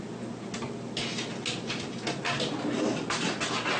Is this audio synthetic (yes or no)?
no